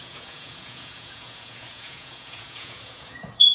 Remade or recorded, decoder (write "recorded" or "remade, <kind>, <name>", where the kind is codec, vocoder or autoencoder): remade, vocoder, Vocos